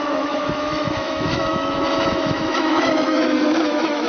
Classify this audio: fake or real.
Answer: fake